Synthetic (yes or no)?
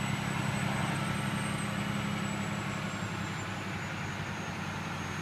no